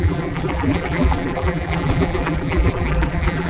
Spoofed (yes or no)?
yes